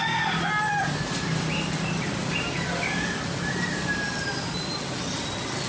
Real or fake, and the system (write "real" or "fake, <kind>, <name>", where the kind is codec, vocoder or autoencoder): real